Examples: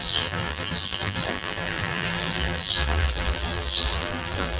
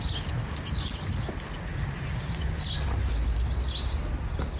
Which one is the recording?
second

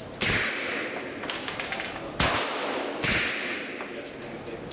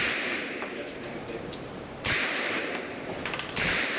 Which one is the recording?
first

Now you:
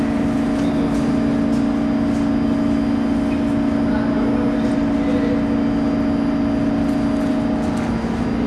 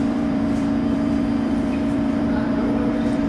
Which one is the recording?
first